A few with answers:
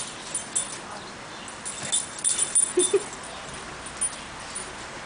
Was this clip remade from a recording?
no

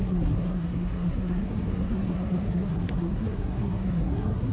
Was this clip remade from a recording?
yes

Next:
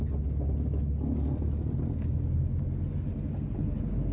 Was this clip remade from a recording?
no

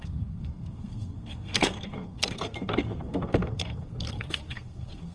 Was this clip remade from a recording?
yes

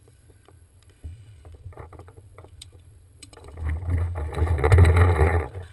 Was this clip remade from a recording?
yes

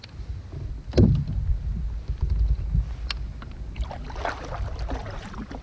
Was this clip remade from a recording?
no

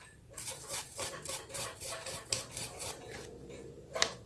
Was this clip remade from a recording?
yes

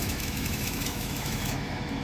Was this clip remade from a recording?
yes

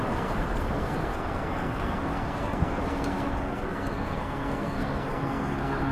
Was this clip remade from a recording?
yes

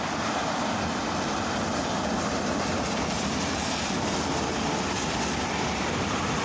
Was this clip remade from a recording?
no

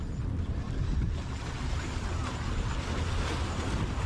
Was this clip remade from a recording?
no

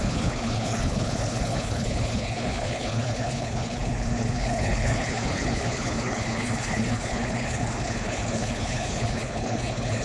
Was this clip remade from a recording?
yes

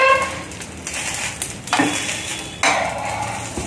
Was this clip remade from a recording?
no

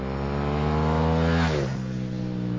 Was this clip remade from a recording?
no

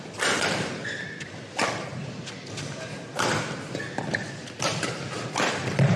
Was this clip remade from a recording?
no